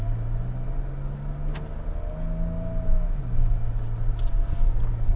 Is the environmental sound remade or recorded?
recorded